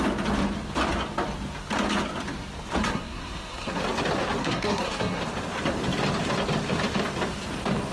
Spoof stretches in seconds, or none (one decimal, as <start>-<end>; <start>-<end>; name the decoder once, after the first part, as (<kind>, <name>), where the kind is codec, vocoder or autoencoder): 2.8-3.8 (codec, SNAC); 4.4-5.2